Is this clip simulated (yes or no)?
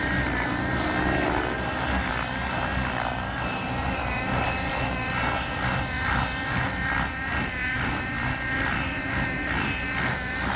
no